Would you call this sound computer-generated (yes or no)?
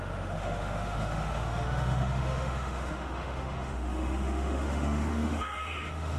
yes